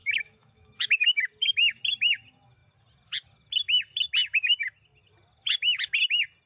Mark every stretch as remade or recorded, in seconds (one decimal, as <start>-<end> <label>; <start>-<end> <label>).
0.0-0.9 remade; 0.9-6.5 recorded